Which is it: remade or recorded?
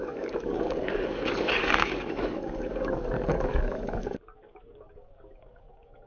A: remade